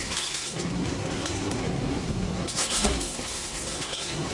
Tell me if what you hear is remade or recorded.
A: remade